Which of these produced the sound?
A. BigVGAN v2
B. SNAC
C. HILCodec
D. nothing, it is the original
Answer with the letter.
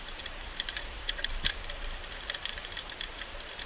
A